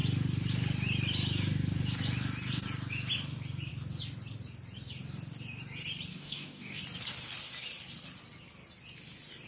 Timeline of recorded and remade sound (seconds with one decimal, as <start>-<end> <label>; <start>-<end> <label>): 0.0-6.1 recorded; 6.1-6.8 remade; 6.8-9.5 recorded